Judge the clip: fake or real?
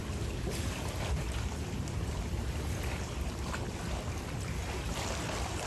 real